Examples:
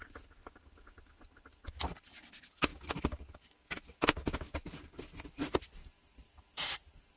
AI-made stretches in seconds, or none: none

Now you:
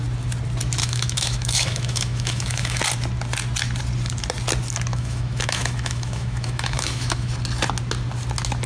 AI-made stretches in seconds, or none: 0.8-2.8 (autoencoder, DAC-VAE); 4.9-7.3